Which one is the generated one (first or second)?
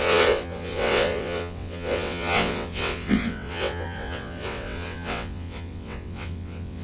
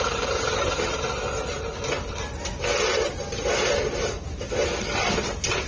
first